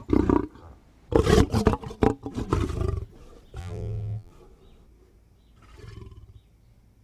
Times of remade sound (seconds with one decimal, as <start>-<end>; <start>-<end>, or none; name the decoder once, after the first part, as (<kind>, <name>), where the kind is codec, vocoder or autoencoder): 3.6-4.3 (vocoder, BigVGAN v2)